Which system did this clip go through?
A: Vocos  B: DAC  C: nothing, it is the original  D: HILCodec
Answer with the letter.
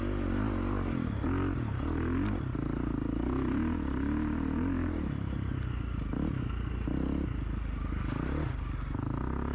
C